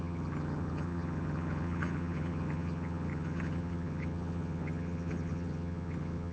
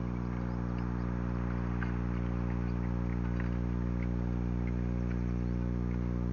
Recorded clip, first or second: second